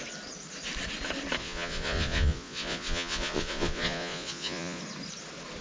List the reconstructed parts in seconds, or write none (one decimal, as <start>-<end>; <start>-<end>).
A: 1.4-4.8